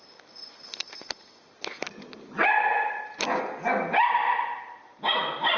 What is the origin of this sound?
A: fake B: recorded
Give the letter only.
B